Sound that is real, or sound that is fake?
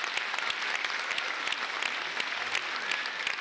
real